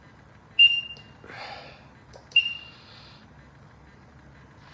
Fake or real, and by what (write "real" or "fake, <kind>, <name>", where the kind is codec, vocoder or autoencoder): real